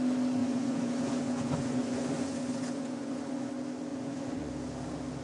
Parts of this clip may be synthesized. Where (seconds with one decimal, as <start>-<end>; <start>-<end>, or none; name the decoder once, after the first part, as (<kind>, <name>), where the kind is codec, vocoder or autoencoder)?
0.4-3.5 (vocoder, Vocos); 3.9-4.5